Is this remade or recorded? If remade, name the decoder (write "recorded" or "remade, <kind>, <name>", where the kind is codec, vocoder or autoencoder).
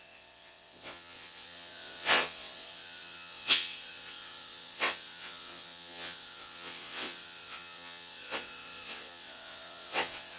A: remade, vocoder, WaveNeXt